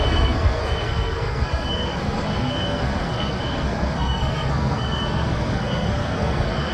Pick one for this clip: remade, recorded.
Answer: remade